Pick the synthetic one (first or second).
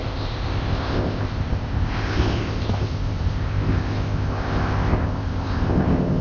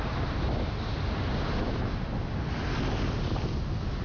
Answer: first